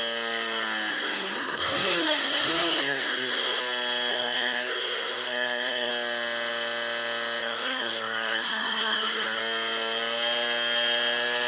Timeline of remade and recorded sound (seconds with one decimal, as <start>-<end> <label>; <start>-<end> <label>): 0.0-0.9 recorded; 0.9-3.6 remade; 3.6-4.1 recorded; 4.1-5.9 remade; 5.9-7.4 recorded; 7.4-9.4 remade; 9.4-11.5 recorded